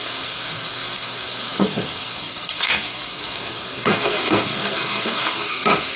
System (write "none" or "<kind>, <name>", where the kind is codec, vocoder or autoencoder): codec, SNAC